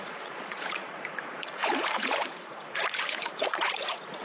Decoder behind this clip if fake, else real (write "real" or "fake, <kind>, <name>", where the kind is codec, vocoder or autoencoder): fake, vocoder, Vocos